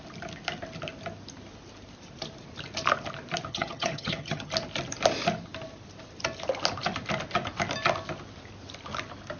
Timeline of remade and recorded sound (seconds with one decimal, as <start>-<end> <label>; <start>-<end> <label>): 0.0-3.5 recorded; 3.5-4.5 remade; 4.5-9.4 recorded